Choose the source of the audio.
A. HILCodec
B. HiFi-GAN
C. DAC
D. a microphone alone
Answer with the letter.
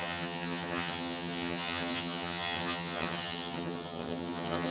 B